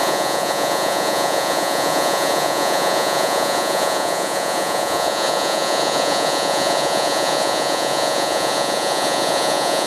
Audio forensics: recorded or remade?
remade